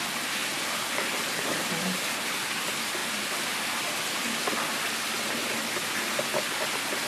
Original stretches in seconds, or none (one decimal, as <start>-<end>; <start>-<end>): 0.0-0.4; 1.0-7.1